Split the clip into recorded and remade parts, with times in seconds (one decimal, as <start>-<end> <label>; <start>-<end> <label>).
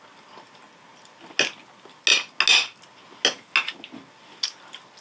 0.0-5.0 recorded